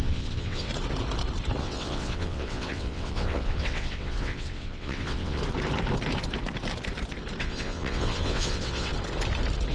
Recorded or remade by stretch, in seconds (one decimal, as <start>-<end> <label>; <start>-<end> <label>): 0.0-0.7 remade; 0.7-1.6 recorded; 1.6-5.4 remade; 5.4-7.4 recorded; 7.4-8.9 remade; 8.9-9.7 recorded